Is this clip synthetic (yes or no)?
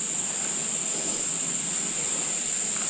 no